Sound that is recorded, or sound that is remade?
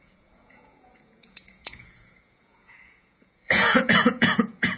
remade